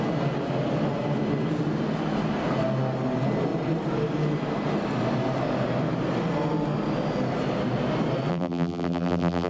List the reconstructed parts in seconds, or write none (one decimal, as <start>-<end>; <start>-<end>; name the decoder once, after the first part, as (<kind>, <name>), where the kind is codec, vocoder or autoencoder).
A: 8.3-9.5 (vocoder, BigVGAN v2)